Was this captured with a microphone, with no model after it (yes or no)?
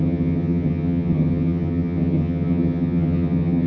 no